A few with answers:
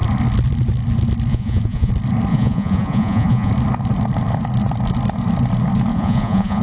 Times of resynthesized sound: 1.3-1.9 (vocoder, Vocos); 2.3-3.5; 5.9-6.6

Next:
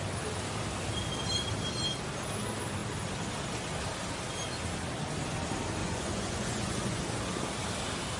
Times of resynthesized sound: 5.8-7.0 (vocoder, Vocos)